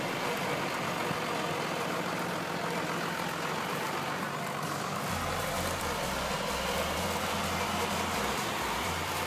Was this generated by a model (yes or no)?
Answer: no